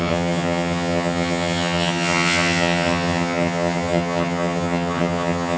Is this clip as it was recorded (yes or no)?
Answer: no